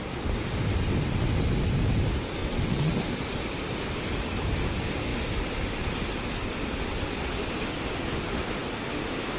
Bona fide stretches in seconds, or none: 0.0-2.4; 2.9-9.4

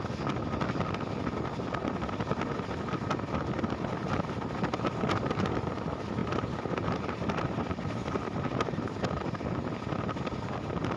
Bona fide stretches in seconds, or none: 0.0-4.0; 5.8-6.2; 9.4-11.0

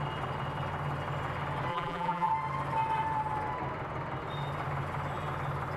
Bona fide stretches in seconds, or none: 0.0-1.7; 2.3-5.8